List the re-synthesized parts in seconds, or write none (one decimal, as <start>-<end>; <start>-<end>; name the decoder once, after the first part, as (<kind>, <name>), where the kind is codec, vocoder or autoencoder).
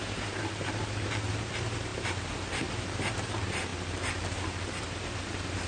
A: 0.0-3.7 (vocoder, BigVGAN v2); 4.8-5.7